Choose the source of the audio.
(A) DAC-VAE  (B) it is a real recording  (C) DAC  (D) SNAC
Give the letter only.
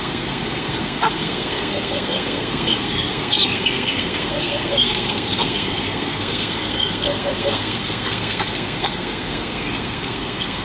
D